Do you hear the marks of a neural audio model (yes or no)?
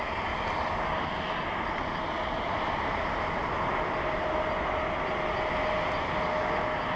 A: no